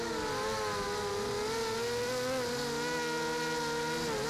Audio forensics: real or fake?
real